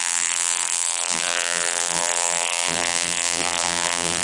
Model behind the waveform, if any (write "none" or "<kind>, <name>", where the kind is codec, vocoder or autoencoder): vocoder, BigVGAN v2